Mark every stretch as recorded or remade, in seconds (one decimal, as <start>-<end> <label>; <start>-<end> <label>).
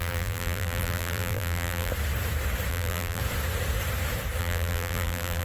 0.0-1.9 remade; 1.9-2.7 recorded; 2.7-3.2 remade; 3.2-4.4 recorded; 4.4-5.4 remade